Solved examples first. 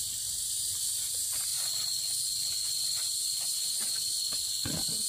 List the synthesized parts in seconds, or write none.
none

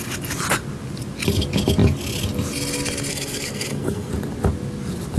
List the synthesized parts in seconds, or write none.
3.1-4.1 (codec, SNAC)

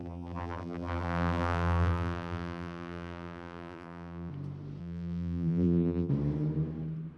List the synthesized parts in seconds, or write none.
0.0-4.3 (vocoder, BigVGAN v2); 4.8-6.1

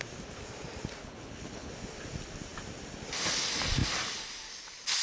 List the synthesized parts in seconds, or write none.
1.0-1.7 (codec, HILCodec)

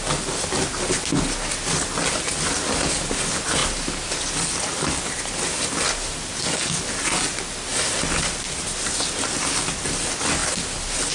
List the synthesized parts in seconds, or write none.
none

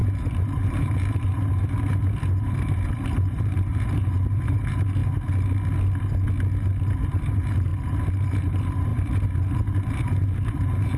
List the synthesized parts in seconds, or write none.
0.0-5.0 (vocoder, BigVGAN v2); 7.2-7.7; 8.3-11.0